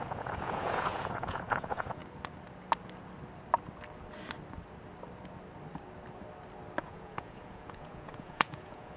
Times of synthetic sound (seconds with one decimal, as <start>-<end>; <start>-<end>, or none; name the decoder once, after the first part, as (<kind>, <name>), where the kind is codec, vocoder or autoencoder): 0.0-2.0 (vocoder, Vocos); 6.8-9.0

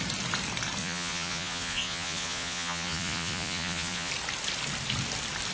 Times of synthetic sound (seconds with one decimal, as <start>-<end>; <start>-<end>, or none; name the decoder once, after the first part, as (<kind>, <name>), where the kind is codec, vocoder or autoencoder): 0.8-4.1 (vocoder, Vocos)

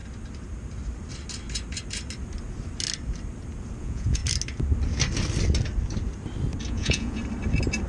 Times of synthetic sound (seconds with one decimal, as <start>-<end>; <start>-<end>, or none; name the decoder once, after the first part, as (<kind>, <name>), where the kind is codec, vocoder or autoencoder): 3.8-4.2 (vocoder, Vocos); 6.7-7.2